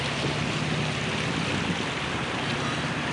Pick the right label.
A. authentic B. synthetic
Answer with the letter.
A